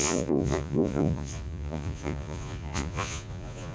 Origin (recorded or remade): remade